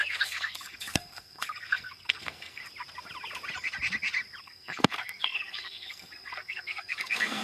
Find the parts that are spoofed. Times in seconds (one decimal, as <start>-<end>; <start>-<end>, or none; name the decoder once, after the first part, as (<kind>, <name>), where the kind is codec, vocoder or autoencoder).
0.0-2.6 (codec, SNAC); 4.4-7.4